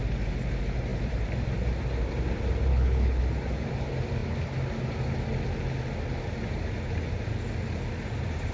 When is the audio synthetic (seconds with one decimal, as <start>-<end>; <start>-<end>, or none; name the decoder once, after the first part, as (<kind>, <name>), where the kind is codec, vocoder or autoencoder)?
2.7-3.2 (codec, HILCodec)